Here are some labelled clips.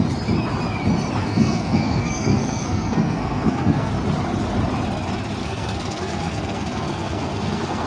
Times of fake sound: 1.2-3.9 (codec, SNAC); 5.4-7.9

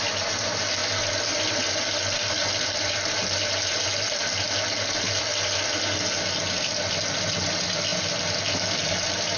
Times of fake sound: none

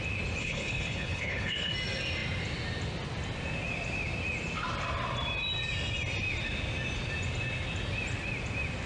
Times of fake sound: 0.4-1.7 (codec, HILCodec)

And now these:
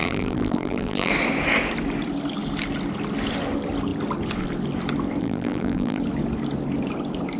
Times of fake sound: 0.0-1.1 (vocoder, BigVGAN v2); 5.2-6.0

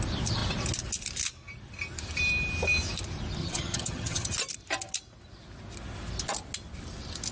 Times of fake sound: 3.4-4.3 (vocoder, HiFi-GAN)